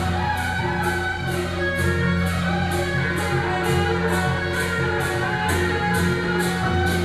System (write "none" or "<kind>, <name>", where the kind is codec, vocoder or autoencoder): none